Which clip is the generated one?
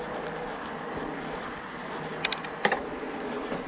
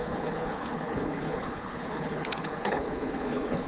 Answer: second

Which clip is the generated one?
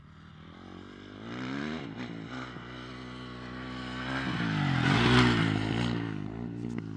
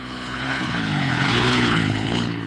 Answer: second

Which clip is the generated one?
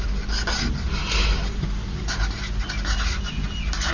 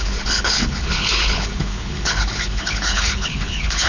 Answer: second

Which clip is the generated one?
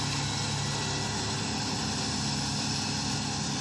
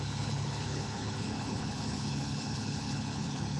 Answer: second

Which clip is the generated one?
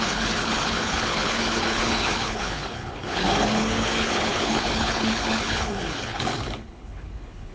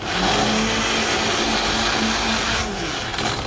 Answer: first